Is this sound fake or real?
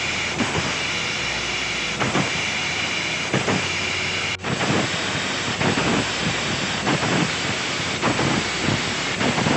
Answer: real